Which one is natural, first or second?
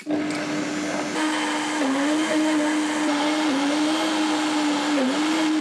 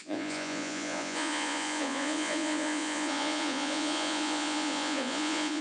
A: first